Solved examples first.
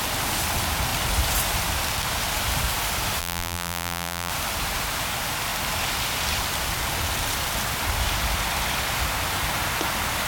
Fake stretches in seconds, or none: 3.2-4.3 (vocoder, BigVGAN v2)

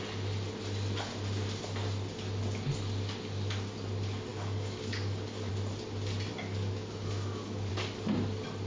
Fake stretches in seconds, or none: 4.3-5.5 (codec, DAC); 6.3-7.7

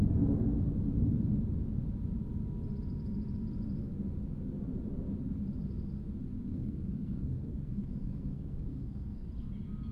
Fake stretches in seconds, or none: 6.5-9.3 (codec, SNAC)